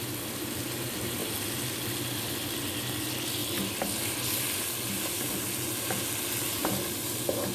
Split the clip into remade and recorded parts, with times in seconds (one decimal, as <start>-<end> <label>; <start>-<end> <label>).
0.0-6.6 recorded; 6.6-7.5 remade